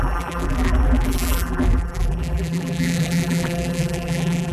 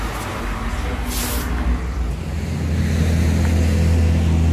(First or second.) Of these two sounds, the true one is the second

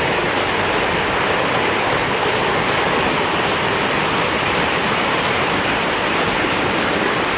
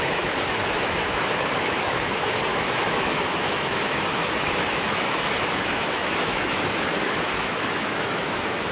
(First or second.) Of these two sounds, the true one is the first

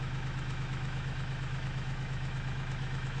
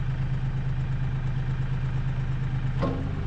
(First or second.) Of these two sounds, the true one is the second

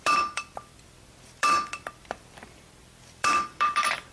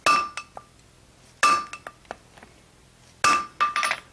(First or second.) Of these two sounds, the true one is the second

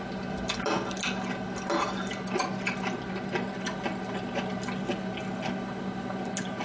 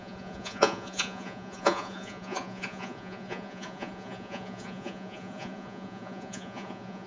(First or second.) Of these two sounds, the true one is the first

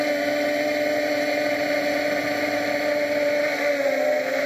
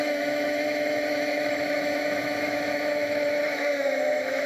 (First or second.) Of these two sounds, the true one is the first